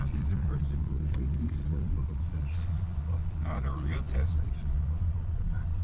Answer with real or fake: fake